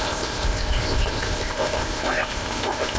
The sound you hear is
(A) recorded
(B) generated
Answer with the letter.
B